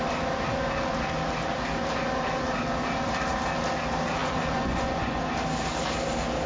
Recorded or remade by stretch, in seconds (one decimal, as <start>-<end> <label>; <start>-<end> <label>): 0.0-4.2 recorded; 4.2-5.2 remade; 5.2-6.5 recorded